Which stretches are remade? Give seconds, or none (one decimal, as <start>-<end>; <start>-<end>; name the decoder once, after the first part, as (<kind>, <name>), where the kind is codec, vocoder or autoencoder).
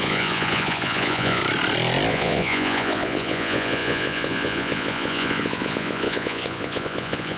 0.0-1.4 (vocoder, Vocos); 2.1-7.4